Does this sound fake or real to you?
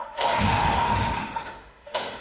fake